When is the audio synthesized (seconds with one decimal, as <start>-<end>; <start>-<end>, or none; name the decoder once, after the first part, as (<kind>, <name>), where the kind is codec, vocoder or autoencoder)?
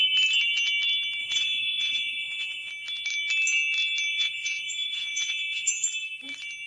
1.2-2.7 (vocoder, Vocos); 4.1-5.9